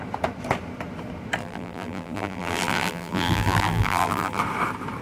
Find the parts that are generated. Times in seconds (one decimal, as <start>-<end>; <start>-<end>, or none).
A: 1.4-4.4